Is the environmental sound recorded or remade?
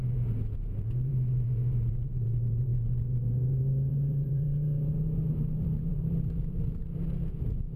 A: remade